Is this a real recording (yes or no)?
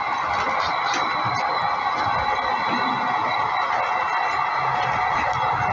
yes